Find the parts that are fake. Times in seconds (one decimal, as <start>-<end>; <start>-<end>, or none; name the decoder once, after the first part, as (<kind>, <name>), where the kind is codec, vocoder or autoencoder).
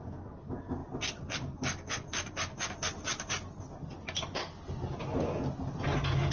none